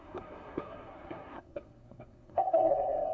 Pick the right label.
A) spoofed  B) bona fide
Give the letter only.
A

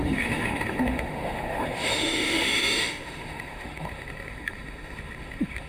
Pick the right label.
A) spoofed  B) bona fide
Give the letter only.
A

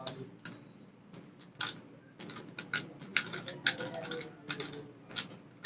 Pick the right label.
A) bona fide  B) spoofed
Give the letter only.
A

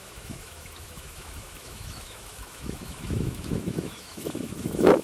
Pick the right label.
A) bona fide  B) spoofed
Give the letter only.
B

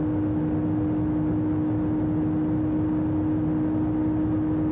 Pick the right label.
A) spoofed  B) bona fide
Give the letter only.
B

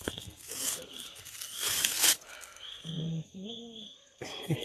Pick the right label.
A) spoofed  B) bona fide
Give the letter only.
A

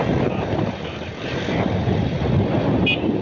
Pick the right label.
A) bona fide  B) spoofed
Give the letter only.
B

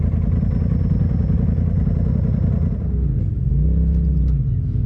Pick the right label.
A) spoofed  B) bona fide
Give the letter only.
B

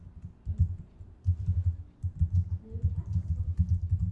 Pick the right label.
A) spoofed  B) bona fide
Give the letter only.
B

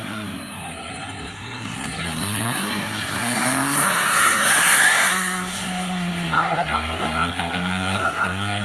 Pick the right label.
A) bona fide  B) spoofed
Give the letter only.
B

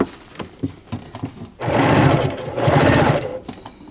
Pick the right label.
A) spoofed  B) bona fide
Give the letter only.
B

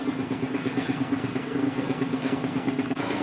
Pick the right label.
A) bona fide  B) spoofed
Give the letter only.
B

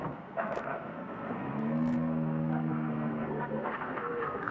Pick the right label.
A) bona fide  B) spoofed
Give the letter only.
B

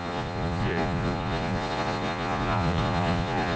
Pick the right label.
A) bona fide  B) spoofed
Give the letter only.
B